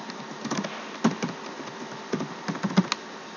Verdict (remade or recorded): recorded